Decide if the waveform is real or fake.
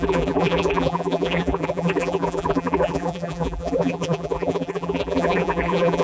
fake